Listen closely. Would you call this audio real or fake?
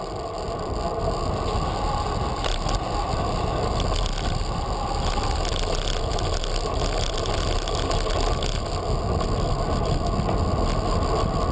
real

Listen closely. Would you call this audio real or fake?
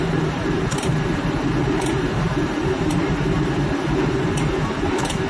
fake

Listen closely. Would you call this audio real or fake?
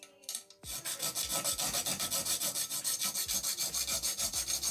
real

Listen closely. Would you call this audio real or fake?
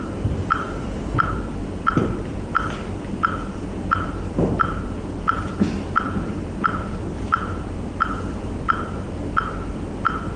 fake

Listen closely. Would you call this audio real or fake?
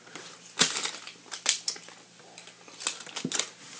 real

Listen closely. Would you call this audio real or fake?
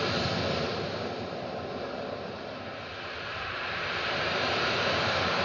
fake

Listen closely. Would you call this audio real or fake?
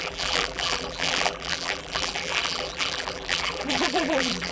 fake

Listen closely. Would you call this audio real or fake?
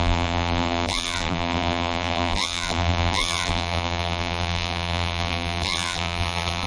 fake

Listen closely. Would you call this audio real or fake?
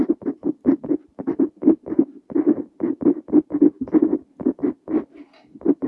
real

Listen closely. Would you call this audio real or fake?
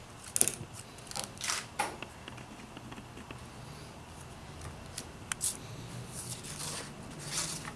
real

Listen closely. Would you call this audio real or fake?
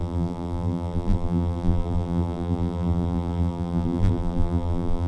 fake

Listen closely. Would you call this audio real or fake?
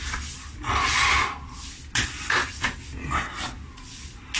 real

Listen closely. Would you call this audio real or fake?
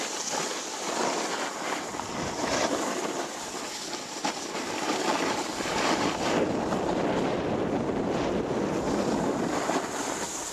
real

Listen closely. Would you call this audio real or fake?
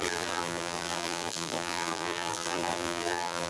fake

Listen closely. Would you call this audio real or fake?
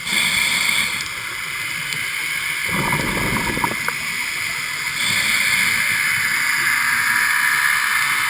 real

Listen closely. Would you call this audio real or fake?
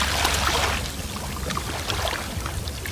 real